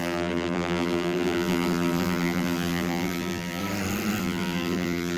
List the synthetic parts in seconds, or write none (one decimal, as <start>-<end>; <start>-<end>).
0.0-3.6; 4.2-5.2